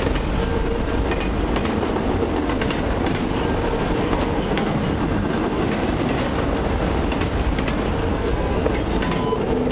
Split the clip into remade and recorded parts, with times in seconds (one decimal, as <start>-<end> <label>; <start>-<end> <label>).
0.0-4.0 recorded; 4.0-4.8 remade; 4.8-8.1 recorded; 8.1-8.7 remade; 8.7-9.7 recorded